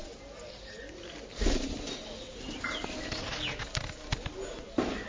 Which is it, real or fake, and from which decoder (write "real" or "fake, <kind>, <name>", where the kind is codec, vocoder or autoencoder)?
real